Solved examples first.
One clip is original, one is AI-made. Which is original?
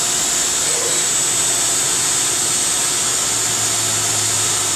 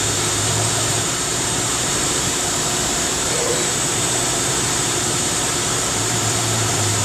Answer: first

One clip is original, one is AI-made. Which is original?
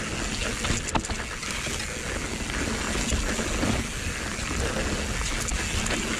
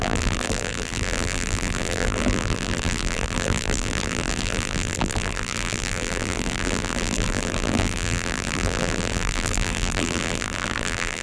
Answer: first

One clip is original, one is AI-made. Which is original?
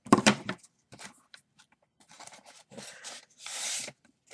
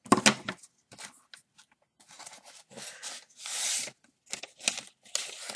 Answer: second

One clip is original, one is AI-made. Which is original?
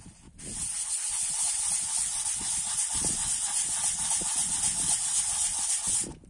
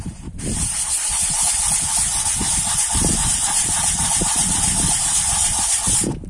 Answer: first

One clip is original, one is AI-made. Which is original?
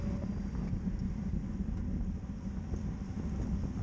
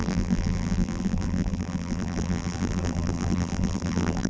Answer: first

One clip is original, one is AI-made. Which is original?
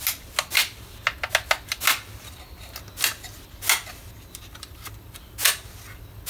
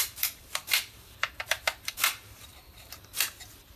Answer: first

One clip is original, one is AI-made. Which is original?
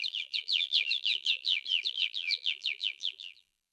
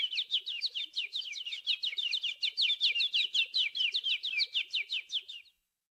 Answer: second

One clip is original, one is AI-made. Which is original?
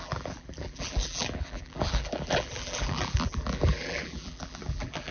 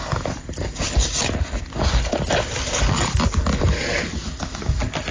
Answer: second